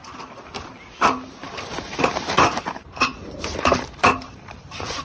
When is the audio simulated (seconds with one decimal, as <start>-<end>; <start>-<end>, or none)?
1.1-5.0